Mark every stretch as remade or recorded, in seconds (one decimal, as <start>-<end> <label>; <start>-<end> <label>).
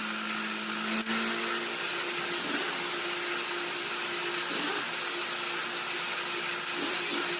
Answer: 0.0-7.4 recorded